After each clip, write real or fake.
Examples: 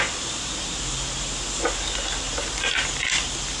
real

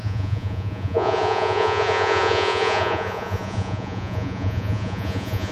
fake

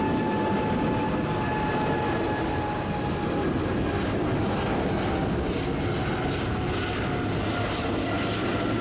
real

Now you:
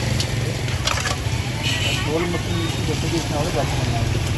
real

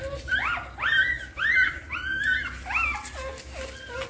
real